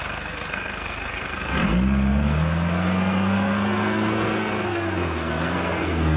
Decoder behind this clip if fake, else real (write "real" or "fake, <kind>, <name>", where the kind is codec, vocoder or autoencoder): fake, codec, SNAC